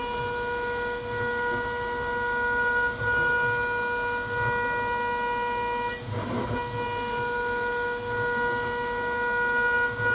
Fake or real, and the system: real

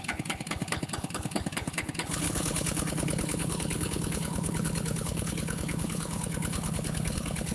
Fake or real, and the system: fake, codec, HILCodec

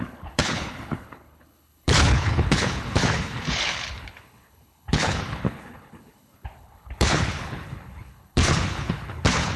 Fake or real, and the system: fake, codec, HILCodec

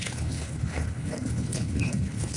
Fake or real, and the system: fake, codec, HILCodec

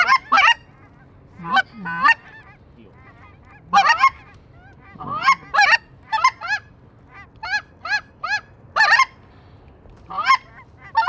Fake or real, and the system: real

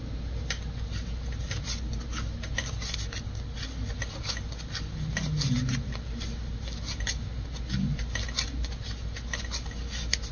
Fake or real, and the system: real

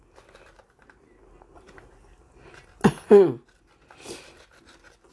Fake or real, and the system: real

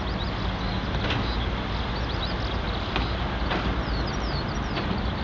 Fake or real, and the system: real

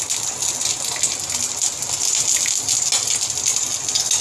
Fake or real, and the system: real